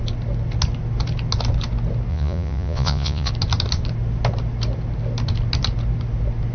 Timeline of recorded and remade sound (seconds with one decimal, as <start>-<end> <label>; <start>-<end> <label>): 0.0-2.1 recorded; 2.1-3.3 remade; 3.3-6.5 recorded